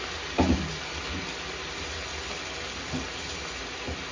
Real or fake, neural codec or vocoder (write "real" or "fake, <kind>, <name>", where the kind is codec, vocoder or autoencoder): real